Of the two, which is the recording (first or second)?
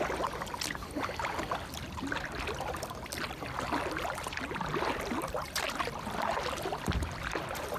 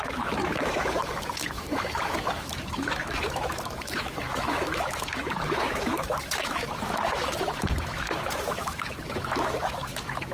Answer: first